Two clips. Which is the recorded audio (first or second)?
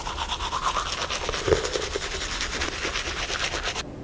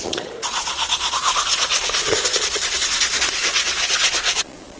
first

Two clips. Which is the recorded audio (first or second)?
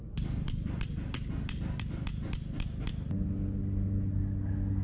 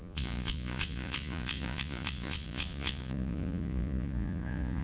first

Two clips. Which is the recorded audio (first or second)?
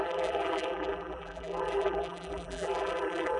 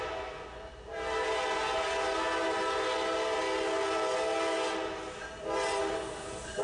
second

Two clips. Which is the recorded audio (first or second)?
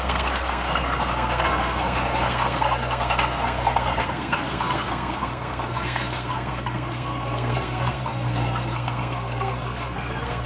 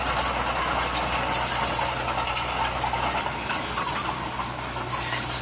second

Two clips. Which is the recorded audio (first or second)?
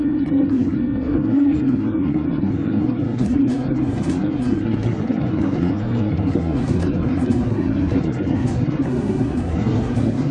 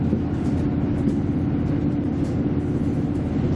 second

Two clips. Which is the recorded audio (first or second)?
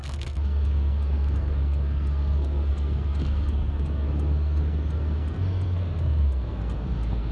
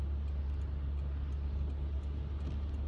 second